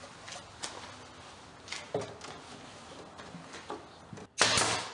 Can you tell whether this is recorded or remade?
recorded